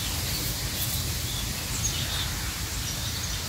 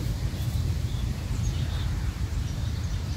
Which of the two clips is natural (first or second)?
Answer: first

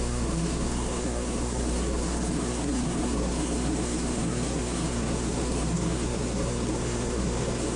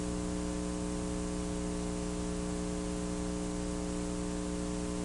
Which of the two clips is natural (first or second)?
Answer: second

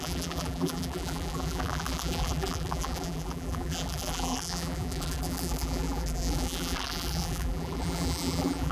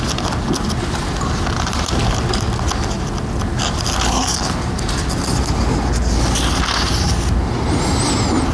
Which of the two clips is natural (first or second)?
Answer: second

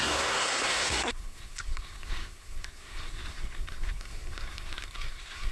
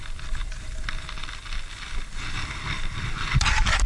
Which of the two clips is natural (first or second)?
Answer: second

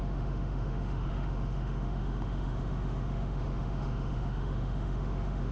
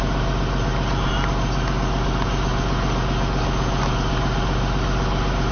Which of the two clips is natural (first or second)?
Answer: second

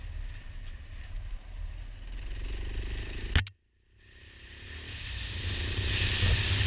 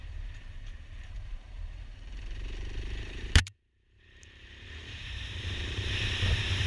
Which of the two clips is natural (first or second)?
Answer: first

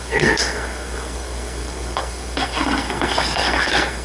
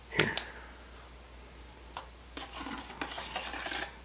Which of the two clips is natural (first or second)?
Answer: second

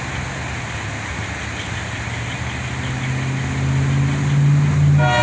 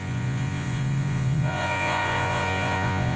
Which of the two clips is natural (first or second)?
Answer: first